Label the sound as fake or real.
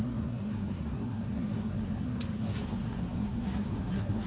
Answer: fake